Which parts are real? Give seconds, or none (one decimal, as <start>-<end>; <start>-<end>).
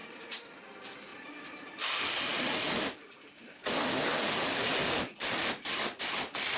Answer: 0.6-1.1; 1.7-6.6